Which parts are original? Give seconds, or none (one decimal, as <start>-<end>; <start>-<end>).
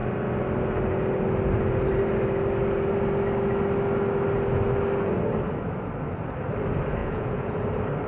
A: 0.0-7.0; 7.5-8.1